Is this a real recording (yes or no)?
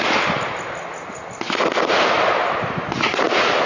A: yes